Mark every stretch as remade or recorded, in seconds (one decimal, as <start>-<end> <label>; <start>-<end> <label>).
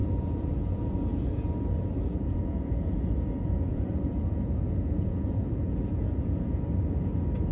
0.0-1.5 remade; 1.5-2.1 recorded; 2.1-6.6 remade; 6.6-7.5 recorded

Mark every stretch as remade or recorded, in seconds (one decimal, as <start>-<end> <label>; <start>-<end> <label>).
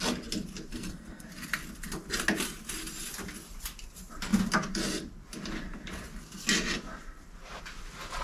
0.0-0.7 recorded; 0.7-1.3 remade; 1.3-8.2 recorded